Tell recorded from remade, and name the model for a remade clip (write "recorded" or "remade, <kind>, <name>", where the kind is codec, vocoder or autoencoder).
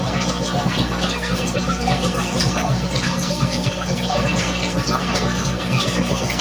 remade, codec, SNAC